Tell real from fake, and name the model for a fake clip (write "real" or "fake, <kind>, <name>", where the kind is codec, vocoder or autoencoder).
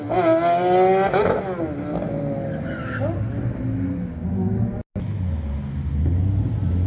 real